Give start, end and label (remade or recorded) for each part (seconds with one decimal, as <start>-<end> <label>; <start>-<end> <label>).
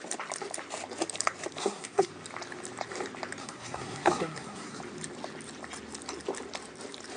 0.0-1.6 recorded; 1.6-2.1 remade; 2.1-3.4 recorded; 3.4-4.8 remade; 4.8-7.2 recorded